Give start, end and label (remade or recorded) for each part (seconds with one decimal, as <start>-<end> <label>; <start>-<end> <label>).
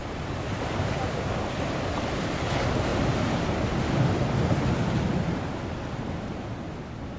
0.0-1.6 remade; 1.6-2.9 recorded; 2.9-3.6 remade; 3.6-4.8 recorded; 4.8-5.6 remade; 5.6-7.2 recorded